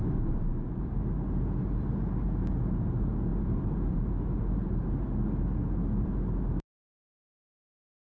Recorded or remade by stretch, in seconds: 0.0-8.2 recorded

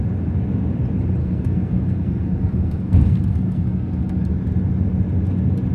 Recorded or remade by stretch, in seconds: 0.0-1.2 recorded; 1.2-4.3 remade; 4.3-5.7 recorded

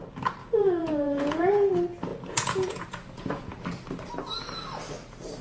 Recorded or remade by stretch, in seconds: 0.0-0.4 recorded; 0.4-1.7 remade; 1.7-2.1 recorded; 2.1-3.6 remade; 3.6-5.4 recorded

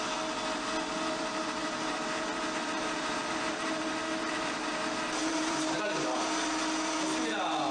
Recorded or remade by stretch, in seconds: 0.0-1.6 recorded; 1.6-5.8 remade; 5.8-7.7 recorded

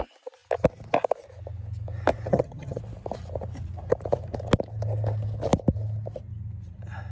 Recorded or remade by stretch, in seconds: 0.0-2.3 recorded; 2.3-2.8 remade; 2.8-7.1 recorded

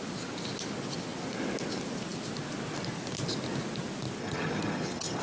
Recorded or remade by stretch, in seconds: 0.0-4.2 recorded; 4.2-5.2 remade

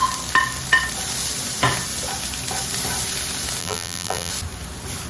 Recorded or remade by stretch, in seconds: 0.0-3.6 recorded; 3.6-4.3 remade; 4.3-5.1 recorded

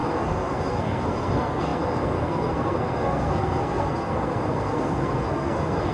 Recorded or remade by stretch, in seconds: 0.0-5.9 remade